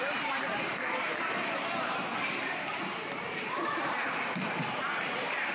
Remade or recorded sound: remade